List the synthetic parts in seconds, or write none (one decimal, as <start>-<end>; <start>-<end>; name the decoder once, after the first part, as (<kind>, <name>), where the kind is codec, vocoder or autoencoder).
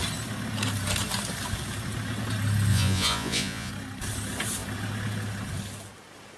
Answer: 2.7-3.7 (vocoder, Vocos)